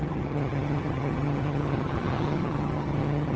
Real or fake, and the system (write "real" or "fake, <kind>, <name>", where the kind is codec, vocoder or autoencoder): fake, vocoder, HiFi-GAN